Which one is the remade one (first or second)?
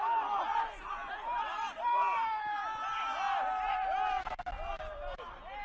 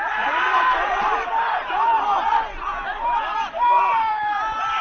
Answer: second